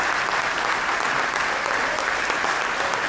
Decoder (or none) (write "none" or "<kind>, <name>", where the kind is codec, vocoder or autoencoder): none